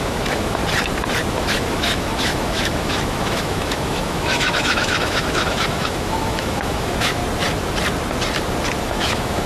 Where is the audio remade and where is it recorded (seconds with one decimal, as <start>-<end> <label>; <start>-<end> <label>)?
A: 0.0-0.6 remade; 0.6-1.3 recorded; 1.3-7.2 remade; 7.2-8.8 recorded; 8.8-9.5 remade